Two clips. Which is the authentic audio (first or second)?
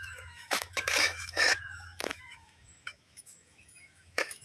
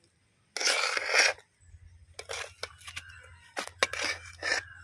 second